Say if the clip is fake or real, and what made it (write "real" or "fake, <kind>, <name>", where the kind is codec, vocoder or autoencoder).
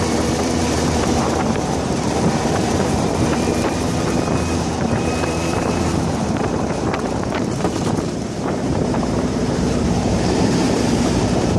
fake, vocoder, BigVGAN v2